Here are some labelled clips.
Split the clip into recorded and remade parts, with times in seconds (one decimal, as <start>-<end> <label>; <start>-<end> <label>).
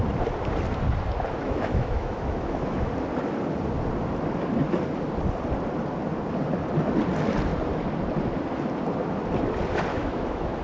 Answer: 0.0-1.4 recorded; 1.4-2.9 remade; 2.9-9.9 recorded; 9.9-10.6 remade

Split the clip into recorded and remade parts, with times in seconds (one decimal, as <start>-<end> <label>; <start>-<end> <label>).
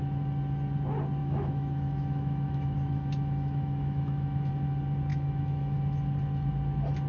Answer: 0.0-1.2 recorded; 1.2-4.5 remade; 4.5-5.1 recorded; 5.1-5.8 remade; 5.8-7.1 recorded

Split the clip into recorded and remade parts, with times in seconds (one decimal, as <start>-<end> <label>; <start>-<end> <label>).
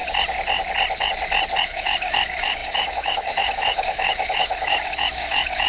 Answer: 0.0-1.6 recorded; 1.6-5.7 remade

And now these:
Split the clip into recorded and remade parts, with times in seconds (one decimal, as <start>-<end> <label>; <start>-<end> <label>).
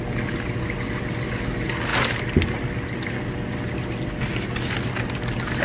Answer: 0.0-5.6 recorded